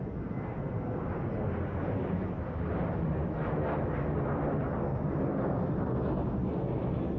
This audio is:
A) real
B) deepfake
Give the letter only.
A